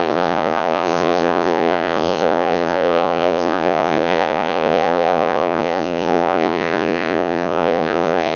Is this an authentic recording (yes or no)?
no